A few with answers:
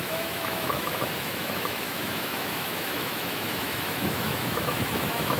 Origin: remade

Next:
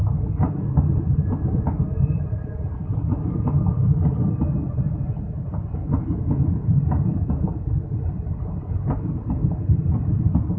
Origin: recorded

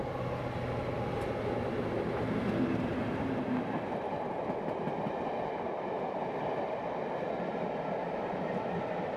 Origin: recorded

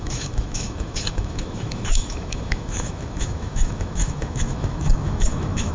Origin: remade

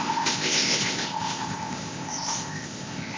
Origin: remade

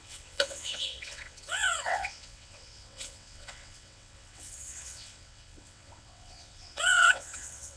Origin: remade